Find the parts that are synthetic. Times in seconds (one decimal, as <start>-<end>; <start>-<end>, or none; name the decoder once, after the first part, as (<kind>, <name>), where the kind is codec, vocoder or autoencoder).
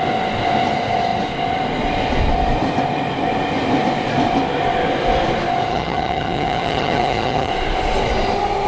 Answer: 5.7-7.5 (vocoder, HiFi-GAN)